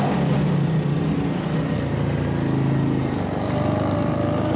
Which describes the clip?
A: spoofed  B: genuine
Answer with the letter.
B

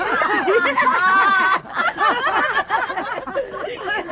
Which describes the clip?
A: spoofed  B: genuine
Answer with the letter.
B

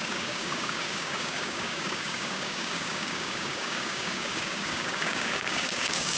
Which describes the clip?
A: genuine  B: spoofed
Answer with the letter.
B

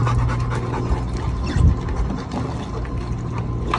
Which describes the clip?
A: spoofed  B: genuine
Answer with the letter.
B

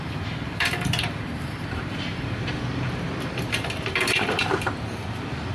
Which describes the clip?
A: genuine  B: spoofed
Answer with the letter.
B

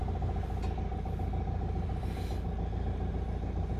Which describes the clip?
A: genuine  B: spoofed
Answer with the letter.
A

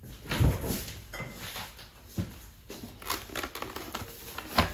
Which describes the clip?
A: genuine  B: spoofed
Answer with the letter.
A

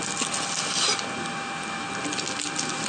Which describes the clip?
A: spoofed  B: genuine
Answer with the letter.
B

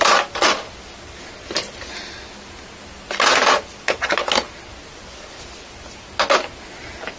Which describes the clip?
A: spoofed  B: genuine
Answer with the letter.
B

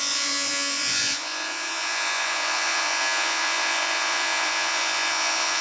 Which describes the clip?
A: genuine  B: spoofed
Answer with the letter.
B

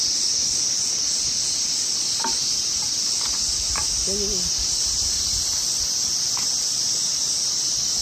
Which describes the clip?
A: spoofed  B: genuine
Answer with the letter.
B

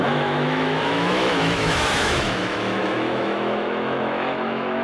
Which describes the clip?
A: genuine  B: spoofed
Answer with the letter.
B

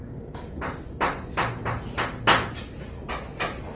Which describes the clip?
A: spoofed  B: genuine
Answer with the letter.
B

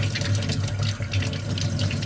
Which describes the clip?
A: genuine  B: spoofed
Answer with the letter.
A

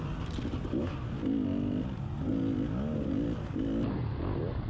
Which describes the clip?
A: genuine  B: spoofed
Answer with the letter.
A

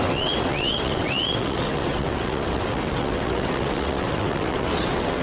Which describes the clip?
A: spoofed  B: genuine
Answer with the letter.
A